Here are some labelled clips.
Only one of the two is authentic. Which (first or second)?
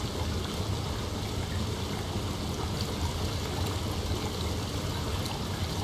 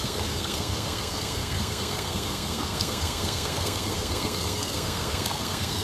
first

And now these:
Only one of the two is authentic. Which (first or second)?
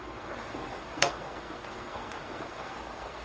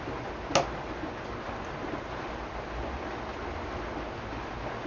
second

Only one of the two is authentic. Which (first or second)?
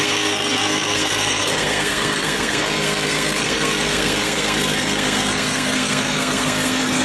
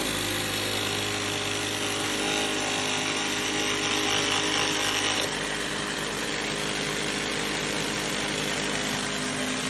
second